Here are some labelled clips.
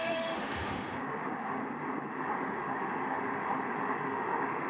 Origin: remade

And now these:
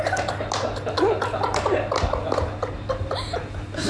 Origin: recorded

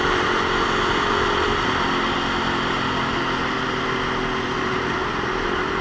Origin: recorded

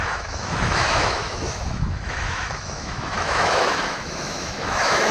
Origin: remade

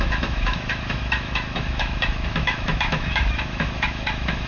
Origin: remade